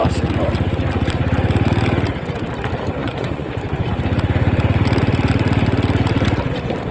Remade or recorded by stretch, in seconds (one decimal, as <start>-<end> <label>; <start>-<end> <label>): 0.0-3.0 recorded; 3.0-3.9 remade; 3.9-6.9 recorded